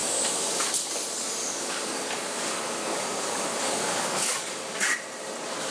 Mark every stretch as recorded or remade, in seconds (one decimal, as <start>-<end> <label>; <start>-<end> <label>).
0.0-0.7 remade; 0.7-1.4 recorded; 1.4-4.8 remade; 4.8-5.7 recorded